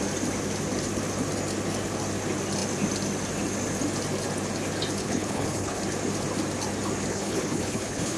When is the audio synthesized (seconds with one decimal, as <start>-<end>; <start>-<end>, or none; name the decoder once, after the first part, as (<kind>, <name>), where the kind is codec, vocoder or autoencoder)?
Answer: 5.0-5.8 (codec, HILCodec); 7.1-8.2